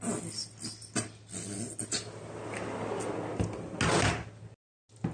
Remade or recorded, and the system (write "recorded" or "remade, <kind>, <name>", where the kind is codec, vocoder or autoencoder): recorded